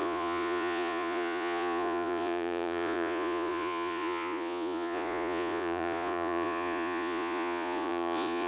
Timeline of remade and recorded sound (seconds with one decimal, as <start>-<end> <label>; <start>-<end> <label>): 0.0-8.5 remade